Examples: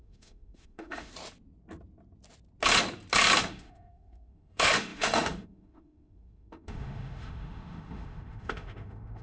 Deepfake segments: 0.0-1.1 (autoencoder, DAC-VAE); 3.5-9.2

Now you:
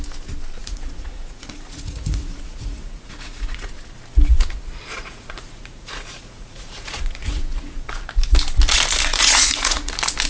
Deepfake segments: 0.6-3.7 (vocoder, Vocos); 4.3-7.9; 9.1-9.9

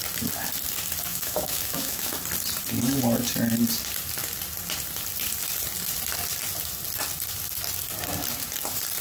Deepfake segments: 1.1-2.1 (autoencoder, DAC-VAE)

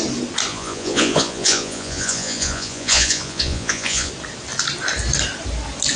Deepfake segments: 0.5-4.1 (vocoder, Vocos)

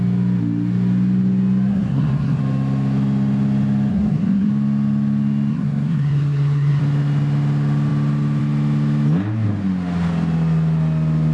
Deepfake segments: 1.7-2.4 (codec, SNAC); 3.9-4.5; 5.5-6.8

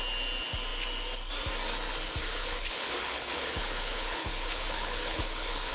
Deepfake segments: 2.2-5.7 (codec, HILCodec)

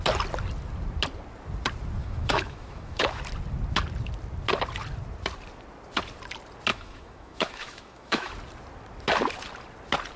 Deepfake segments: 2.0-3.2 (autoencoder, DAC-VAE); 6.7-8.3